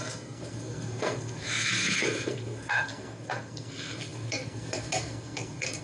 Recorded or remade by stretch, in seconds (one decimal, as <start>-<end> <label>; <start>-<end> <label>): 0.0-5.8 remade